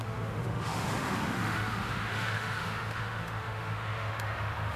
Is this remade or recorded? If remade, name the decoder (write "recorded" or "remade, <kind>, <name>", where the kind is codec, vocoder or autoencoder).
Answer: remade, autoencoder, DAC-VAE